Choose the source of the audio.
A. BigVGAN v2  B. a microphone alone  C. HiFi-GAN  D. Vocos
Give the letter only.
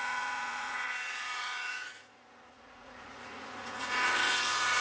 D